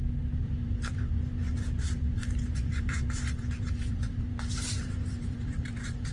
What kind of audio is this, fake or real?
fake